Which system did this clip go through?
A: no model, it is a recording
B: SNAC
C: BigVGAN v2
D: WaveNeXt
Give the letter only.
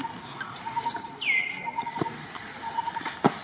A